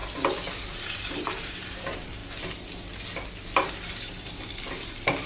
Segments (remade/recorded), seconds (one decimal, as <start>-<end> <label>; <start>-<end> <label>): 0.0-0.5 recorded; 0.5-2.2 remade; 2.2-4.7 recorded; 4.7-5.3 remade